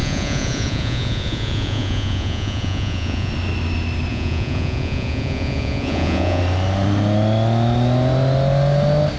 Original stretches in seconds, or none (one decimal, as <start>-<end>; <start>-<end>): 3.3-4.1; 6.4-9.2